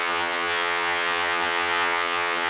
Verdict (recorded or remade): remade